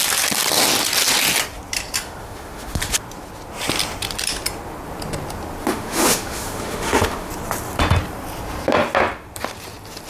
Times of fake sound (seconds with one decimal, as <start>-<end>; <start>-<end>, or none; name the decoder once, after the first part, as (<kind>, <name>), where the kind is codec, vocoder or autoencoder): 2.2-2.8 (autoencoder, DAC-VAE); 5.6-7.3